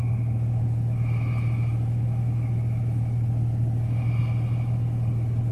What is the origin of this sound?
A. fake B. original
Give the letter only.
B